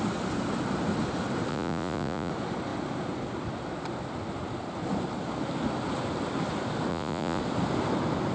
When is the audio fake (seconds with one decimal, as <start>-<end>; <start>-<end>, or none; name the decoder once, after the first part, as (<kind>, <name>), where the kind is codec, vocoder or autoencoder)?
1.5-2.3 (vocoder, Vocos); 6.9-7.4